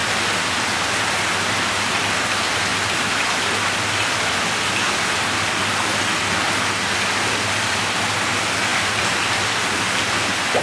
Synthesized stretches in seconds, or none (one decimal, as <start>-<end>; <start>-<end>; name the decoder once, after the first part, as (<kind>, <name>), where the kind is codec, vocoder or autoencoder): 8.7-9.6 (vocoder, BigVGAN v2)